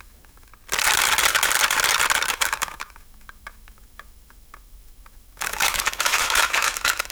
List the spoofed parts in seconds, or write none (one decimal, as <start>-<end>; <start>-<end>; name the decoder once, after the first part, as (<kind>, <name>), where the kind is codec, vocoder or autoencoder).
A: 0.0-0.5 (autoencoder, DAC-VAE); 2.3-7.1